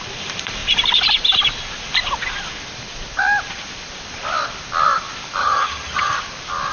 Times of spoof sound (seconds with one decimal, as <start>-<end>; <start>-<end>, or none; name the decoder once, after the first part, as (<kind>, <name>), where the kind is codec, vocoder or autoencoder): 5.4-6.1 (vocoder, HiFi-GAN)